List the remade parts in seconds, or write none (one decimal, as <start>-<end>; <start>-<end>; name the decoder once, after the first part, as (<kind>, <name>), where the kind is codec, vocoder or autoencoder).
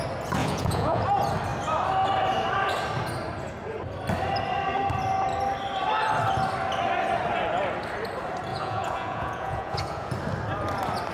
0.4-1.0 (vocoder, Vocos); 8.5-10.1